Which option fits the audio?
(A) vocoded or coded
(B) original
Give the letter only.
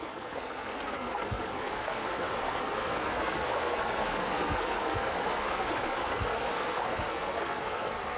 A